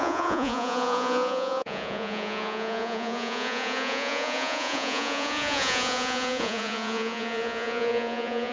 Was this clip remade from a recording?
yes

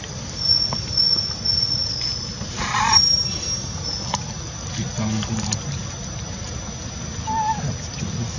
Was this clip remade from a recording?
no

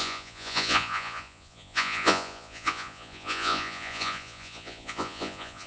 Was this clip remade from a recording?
yes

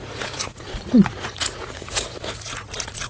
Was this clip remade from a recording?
yes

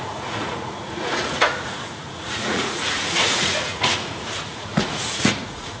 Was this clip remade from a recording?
yes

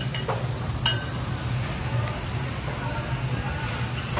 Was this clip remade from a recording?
no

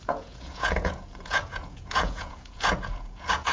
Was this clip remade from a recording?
yes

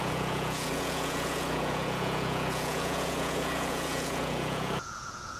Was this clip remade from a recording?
yes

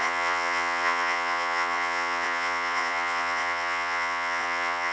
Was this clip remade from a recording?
yes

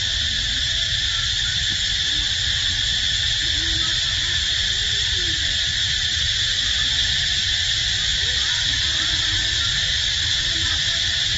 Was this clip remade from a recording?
no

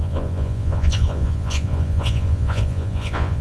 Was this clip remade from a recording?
yes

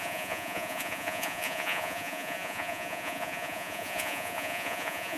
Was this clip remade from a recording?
yes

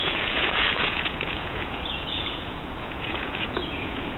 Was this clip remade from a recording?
yes